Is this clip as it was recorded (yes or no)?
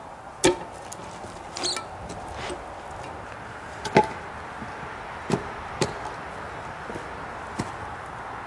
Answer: yes